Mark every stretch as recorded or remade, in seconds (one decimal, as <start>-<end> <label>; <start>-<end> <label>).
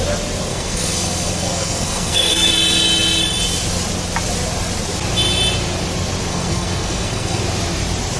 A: 0.0-0.5 recorded; 0.5-2.5 remade; 2.5-6.3 recorded; 6.3-7.4 remade; 7.4-8.2 recorded